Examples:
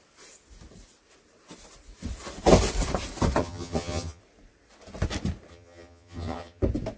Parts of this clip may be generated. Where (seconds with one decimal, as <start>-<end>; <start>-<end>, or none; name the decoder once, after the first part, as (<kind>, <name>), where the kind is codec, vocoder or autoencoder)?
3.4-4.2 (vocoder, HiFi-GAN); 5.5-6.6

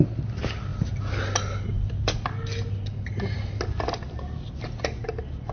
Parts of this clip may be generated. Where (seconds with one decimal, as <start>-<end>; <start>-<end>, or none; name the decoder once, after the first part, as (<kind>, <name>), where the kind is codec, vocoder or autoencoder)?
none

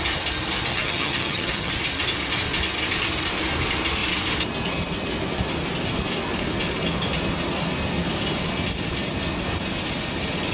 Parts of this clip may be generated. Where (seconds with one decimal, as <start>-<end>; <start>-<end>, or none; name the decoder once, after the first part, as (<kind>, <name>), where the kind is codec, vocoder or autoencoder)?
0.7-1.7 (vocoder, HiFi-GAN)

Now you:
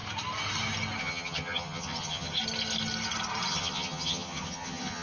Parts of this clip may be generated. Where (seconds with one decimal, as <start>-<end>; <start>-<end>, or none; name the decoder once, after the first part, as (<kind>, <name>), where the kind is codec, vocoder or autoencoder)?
1.0-2.4 (vocoder, HiFi-GAN); 3.5-5.0

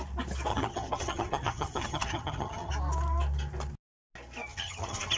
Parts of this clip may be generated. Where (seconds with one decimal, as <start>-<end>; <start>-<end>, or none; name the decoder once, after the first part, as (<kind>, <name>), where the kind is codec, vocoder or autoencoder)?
0.5-2.7 (vocoder, HiFi-GAN); 4.5-5.2

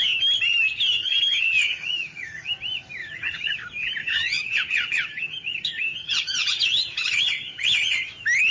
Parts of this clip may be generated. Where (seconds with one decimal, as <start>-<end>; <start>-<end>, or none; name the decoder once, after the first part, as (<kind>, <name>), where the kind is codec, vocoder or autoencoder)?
1.0-2.5 (vocoder, HiFi-GAN); 3.0-3.5; 4.0-8.1

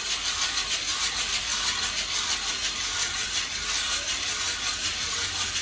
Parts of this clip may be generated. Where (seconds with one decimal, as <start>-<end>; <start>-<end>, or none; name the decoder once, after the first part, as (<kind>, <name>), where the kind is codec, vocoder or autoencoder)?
none